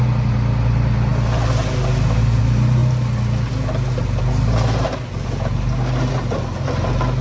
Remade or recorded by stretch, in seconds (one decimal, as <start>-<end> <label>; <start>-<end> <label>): 0.0-7.2 recorded